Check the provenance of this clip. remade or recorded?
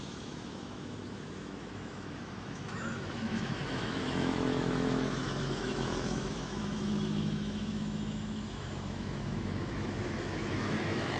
remade